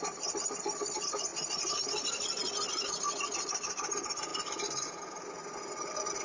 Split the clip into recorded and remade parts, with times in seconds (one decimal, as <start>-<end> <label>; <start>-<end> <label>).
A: 0.0-2.4 remade; 2.4-3.6 recorded; 3.6-4.3 remade; 4.3-5.2 recorded; 5.2-6.2 remade